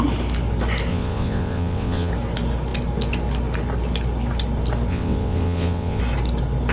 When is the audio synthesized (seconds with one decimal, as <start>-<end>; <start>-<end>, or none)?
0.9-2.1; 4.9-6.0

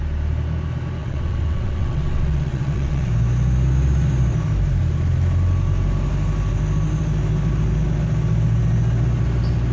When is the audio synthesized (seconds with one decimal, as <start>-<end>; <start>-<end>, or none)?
1.0-3.1

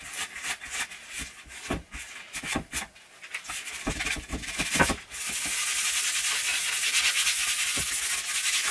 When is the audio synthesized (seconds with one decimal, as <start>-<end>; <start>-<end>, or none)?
none

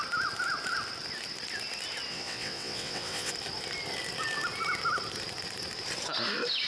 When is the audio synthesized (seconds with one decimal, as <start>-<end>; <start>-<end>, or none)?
2.1-3.3

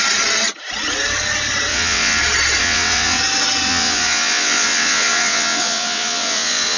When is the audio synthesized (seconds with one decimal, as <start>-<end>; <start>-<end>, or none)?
1.7-2.2; 2.6-3.2; 3.7-6.8

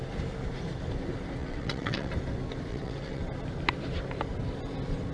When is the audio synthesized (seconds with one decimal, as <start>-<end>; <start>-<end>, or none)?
1.4-2.1; 2.7-3.2

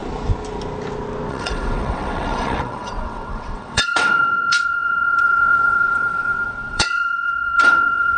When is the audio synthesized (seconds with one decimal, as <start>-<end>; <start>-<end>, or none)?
1.3-8.2